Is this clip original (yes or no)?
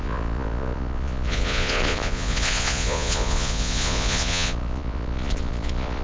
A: no